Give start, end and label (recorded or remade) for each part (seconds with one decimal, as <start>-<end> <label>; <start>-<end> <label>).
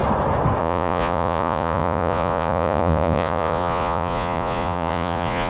0.0-0.6 recorded; 0.6-5.5 remade